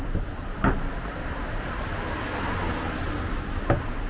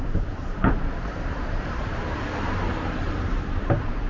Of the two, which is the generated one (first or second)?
second